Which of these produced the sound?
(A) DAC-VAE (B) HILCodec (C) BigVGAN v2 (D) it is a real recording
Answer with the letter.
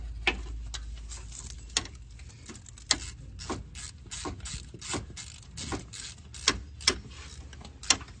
D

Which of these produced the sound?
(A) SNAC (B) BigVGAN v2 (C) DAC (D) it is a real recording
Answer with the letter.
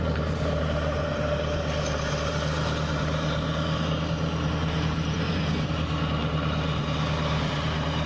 B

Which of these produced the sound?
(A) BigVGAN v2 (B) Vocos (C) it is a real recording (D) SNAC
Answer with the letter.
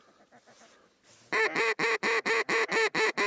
C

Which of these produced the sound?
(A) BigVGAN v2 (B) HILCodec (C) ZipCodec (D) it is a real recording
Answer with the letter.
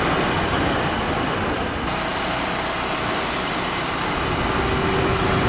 D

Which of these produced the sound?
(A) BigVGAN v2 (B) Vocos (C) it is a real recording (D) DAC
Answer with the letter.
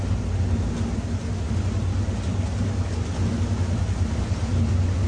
C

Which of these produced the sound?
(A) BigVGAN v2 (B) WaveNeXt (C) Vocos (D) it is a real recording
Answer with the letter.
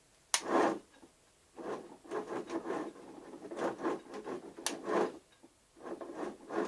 D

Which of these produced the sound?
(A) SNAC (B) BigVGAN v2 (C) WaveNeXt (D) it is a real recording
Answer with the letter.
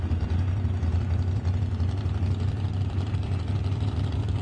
B